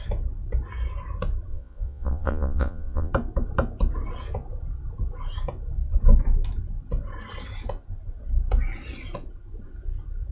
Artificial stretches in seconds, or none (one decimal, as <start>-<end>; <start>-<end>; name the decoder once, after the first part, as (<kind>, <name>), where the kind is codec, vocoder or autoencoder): 1.5-3.1 (vocoder, Vocos)